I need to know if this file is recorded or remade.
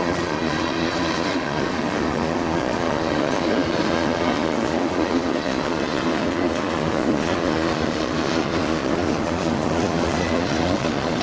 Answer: remade